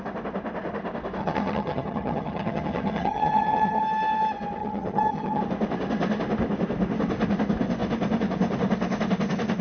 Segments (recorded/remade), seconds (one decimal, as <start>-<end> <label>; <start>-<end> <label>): 0.0-1.2 recorded; 1.2-3.8 remade; 3.8-4.6 recorded; 4.6-5.4 remade; 5.4-9.6 recorded